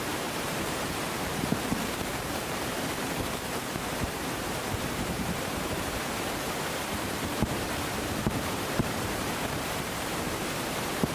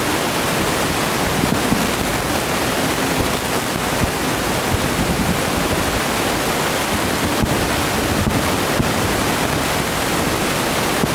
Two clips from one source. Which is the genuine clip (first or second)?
second